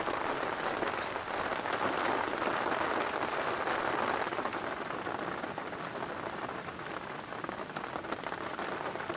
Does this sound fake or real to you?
real